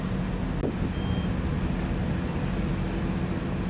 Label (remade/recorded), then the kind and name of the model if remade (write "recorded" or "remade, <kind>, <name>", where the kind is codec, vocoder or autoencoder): recorded